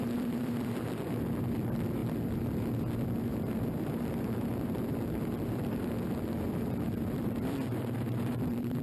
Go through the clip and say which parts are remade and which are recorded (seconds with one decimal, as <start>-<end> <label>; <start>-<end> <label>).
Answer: 0.0-2.0 remade; 2.0-6.5 recorded; 6.5-8.8 remade